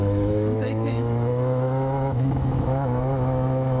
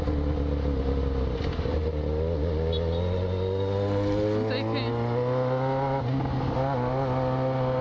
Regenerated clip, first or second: first